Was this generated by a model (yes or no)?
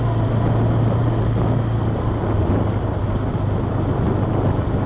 no